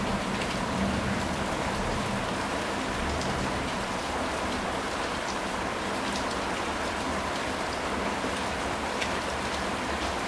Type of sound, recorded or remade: remade